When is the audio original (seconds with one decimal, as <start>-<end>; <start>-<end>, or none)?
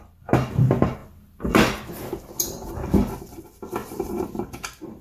0.0-3.8; 4.5-5.0